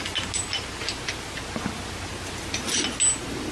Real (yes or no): yes